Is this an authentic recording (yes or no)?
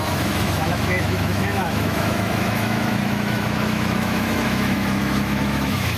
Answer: no